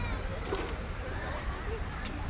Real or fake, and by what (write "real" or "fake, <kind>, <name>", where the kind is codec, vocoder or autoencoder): real